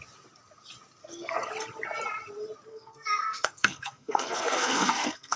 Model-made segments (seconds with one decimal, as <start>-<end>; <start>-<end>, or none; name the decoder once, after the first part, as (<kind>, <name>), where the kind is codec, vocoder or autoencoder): 1.0-1.5 (codec, SNAC); 2.7-5.4